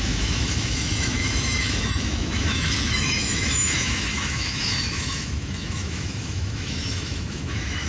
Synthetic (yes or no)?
yes